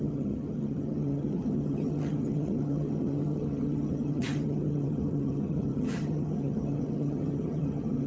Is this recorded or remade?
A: remade